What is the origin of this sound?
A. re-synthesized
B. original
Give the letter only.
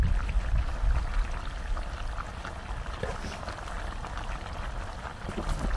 B